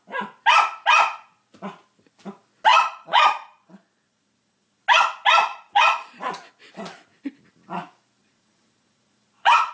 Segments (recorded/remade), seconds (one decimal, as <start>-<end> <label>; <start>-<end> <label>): 0.0-2.7 recorded; 2.7-4.8 remade; 4.8-5.5 recorded; 5.5-6.3 remade; 6.3-8.2 recorded; 8.2-9.7 remade

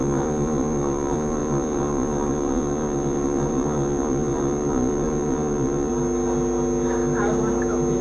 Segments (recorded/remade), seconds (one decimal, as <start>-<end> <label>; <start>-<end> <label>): 0.0-5.9 remade; 5.9-8.0 recorded

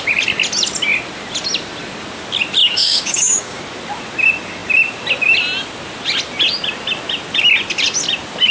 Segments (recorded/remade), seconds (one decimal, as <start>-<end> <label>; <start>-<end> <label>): 0.0-2.6 recorded; 2.6-3.6 remade; 3.6-8.5 recorded

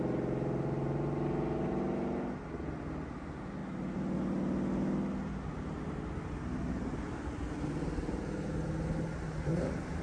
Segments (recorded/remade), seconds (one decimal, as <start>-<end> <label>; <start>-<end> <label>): 0.0-10.0 recorded

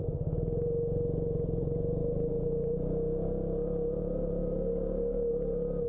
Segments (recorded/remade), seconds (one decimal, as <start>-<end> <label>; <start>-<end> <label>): 0.0-5.9 recorded

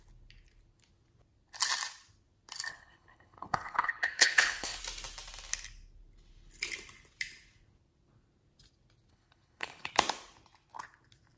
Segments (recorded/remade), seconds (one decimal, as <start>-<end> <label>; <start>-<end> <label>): 0.0-2.7 recorded; 2.7-4.8 remade; 4.8-9.1 recorded; 9.1-9.9 remade; 9.9-11.4 recorded